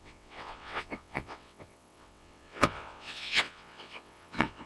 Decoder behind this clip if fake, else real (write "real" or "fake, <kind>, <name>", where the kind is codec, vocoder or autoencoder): fake, vocoder, WaveNeXt